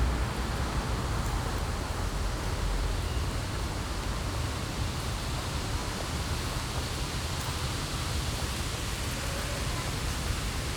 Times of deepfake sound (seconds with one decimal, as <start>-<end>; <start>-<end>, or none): none